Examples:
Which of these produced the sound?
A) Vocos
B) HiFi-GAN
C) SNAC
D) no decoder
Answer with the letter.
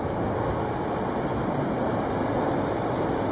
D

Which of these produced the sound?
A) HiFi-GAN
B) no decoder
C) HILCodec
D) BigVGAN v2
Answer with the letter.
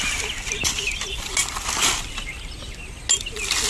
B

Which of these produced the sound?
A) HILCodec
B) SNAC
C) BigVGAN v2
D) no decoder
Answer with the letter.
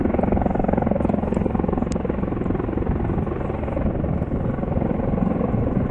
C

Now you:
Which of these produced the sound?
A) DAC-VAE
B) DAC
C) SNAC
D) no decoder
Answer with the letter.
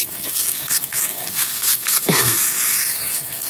C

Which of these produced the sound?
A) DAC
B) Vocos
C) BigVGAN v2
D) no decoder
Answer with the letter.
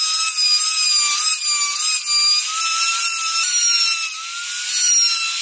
D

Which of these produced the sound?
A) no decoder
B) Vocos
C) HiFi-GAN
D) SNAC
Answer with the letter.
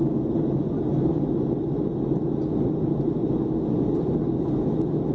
A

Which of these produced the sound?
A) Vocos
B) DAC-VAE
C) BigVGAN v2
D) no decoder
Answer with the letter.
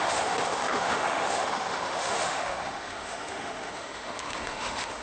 B